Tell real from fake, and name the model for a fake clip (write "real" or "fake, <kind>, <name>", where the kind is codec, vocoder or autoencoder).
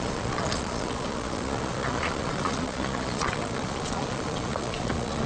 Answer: fake, vocoder, Vocos